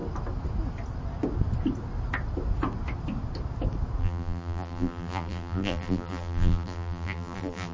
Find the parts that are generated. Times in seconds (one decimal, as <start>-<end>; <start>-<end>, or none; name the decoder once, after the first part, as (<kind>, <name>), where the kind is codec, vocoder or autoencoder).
4.0-7.7 (vocoder, BigVGAN v2)